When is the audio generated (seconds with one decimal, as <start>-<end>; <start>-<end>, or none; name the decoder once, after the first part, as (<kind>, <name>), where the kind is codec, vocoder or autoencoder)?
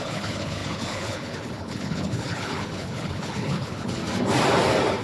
0.0-4.0 (codec, HILCodec)